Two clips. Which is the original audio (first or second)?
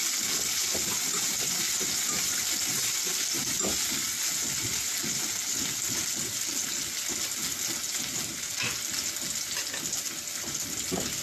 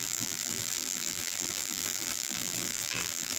first